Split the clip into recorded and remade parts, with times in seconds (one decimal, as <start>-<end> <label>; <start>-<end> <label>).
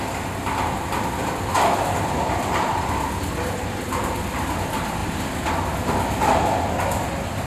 0.0-7.5 recorded